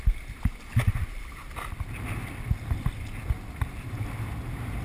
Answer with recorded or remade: recorded